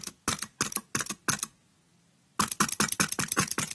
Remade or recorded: recorded